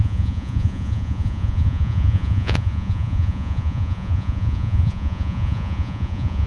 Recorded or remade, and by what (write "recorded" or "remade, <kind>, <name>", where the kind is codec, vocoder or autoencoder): remade, vocoder, Vocos